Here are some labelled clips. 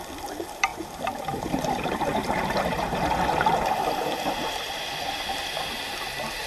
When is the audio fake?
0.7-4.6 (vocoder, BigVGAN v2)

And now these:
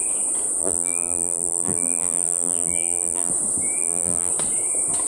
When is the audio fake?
0.6-3.3 (vocoder, BigVGAN v2); 3.8-4.3